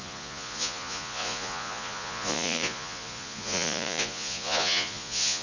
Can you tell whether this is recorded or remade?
remade